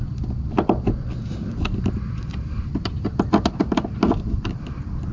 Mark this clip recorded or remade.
recorded